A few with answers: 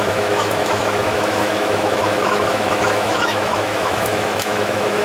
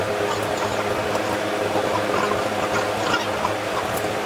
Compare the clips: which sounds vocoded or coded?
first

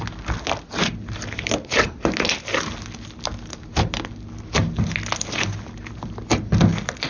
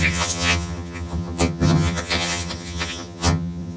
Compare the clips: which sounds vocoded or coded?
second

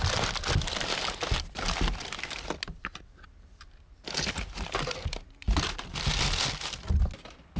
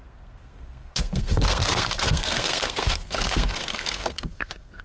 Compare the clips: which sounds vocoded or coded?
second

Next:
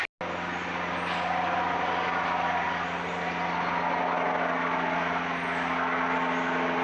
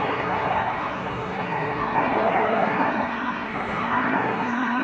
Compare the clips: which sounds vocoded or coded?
second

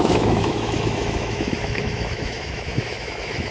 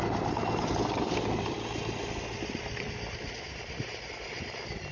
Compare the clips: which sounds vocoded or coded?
first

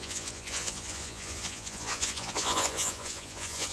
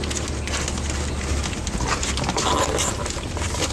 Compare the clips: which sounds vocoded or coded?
first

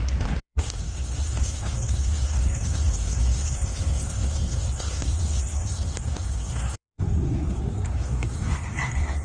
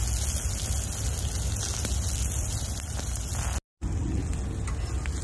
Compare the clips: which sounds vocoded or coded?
first